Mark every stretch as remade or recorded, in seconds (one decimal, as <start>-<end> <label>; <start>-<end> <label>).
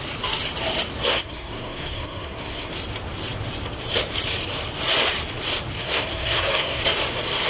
0.0-1.1 recorded; 1.1-2.7 remade; 2.7-5.8 recorded; 5.8-6.8 remade; 6.8-7.5 recorded